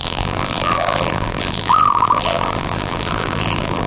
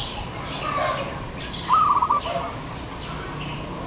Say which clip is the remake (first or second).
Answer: first